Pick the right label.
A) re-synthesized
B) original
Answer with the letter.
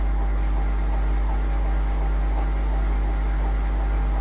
B